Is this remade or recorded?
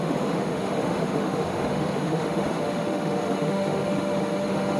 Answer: remade